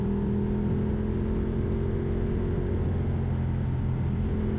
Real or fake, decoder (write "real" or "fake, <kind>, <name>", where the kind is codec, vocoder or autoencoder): real